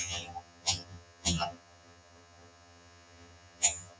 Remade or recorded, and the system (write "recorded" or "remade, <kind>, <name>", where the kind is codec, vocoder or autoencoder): remade, vocoder, HiFi-GAN